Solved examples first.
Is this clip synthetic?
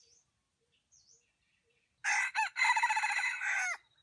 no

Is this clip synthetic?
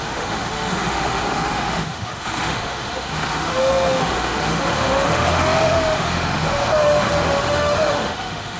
yes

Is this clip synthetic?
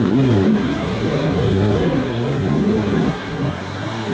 yes